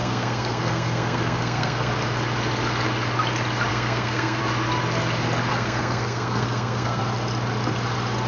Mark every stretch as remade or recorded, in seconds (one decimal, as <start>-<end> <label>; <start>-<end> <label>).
0.0-1.9 remade; 1.9-3.7 recorded; 3.7-4.4 remade; 4.4-5.5 recorded; 5.5-7.0 remade; 7.0-8.3 recorded